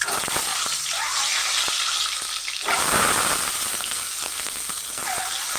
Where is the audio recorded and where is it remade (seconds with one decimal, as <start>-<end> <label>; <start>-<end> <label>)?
0.0-3.7 recorded; 3.7-5.0 remade; 5.0-5.6 recorded

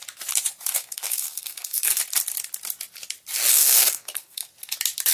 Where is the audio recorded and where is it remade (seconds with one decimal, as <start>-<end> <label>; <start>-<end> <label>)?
0.0-0.7 recorded; 0.7-2.0 remade; 2.0-3.5 recorded; 3.5-4.5 remade; 4.5-5.1 recorded

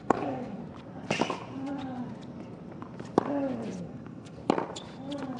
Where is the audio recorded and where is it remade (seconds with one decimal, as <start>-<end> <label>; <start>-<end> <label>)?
0.0-0.6 remade; 0.6-3.8 recorded; 3.8-4.4 remade; 4.4-5.4 recorded

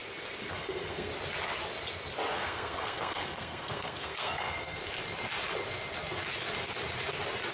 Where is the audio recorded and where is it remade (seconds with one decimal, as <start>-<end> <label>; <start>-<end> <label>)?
0.0-0.5 recorded; 0.5-1.1 remade; 1.1-2.3 recorded; 2.3-4.8 remade; 4.8-7.5 recorded

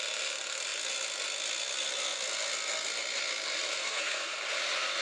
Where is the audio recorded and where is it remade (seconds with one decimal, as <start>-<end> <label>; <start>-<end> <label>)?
0.0-3.8 recorded; 3.8-4.4 remade; 4.4-5.0 recorded